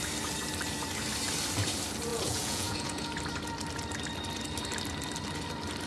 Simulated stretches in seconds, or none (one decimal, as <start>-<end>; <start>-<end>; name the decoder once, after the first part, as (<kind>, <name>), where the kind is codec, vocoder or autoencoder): 2.1-3.1 (vocoder, Vocos)